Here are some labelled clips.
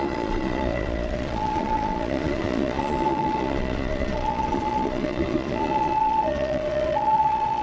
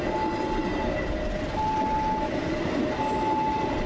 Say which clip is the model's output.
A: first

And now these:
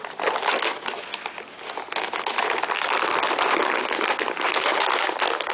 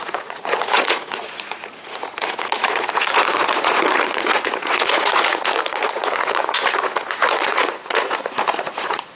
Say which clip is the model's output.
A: second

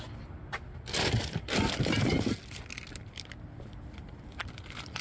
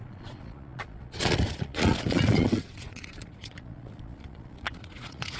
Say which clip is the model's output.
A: second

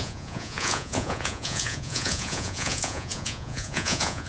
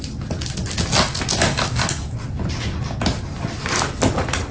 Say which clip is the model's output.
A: first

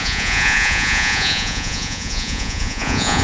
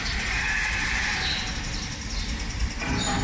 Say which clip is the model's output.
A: first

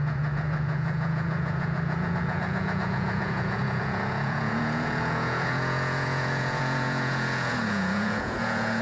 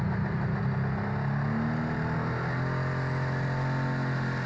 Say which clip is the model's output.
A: first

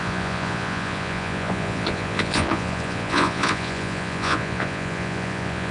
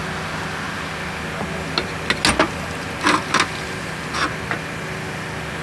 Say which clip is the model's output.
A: first